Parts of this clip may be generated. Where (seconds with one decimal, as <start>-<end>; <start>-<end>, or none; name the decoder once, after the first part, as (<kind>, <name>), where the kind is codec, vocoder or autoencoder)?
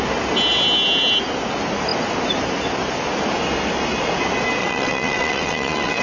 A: 4.6-6.0 (vocoder, WaveNeXt)